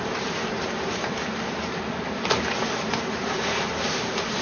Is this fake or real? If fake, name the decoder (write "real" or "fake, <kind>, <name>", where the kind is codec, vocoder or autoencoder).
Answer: fake, vocoder, BigVGAN v2